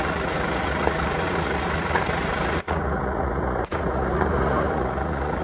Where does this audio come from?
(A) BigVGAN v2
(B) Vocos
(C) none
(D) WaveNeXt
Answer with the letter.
B